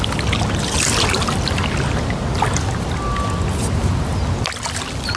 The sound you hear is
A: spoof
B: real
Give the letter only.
B